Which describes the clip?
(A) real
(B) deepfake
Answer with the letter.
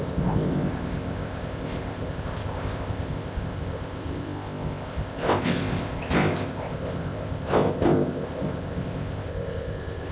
B